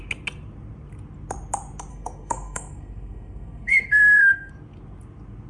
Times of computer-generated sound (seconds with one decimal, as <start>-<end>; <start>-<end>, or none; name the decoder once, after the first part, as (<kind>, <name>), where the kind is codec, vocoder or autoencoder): 1.9-4.5 (codec, SNAC)